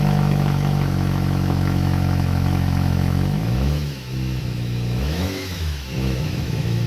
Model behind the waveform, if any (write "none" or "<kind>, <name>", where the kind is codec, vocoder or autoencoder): autoencoder, DAC-VAE